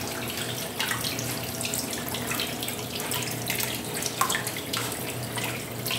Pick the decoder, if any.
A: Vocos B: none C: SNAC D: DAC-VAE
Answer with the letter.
B